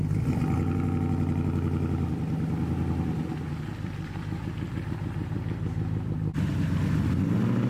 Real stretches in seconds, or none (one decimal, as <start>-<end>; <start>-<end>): 0.0-3.7; 6.8-7.7